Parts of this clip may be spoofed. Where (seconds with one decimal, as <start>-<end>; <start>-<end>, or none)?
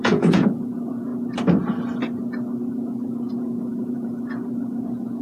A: 0.0-1.1; 2.7-5.2